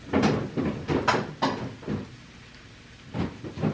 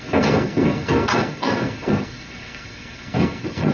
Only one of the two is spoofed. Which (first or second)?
second